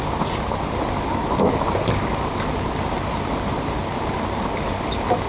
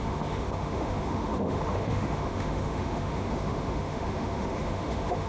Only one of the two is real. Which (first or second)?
first